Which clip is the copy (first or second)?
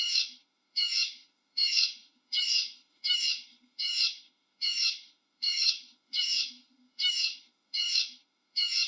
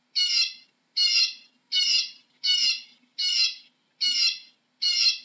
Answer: first